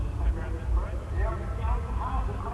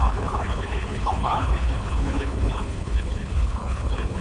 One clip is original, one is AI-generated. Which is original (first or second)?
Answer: first